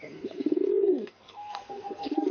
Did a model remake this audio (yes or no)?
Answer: yes